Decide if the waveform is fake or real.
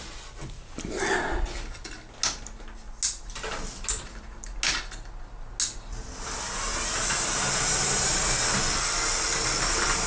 real